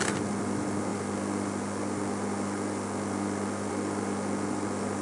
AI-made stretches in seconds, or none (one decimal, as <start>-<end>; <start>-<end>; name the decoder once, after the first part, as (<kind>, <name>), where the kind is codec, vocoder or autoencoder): none